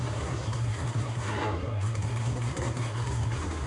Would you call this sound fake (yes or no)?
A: yes